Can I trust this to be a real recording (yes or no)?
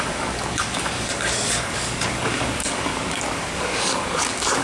no